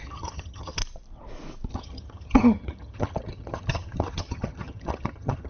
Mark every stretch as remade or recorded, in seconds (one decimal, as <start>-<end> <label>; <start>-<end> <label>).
0.0-0.8 remade; 0.8-1.7 recorded; 1.7-5.5 remade